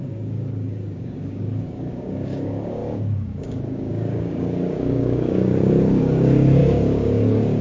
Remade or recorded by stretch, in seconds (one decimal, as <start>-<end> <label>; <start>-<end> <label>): 0.0-7.6 remade